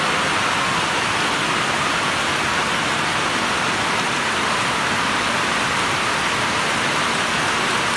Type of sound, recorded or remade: recorded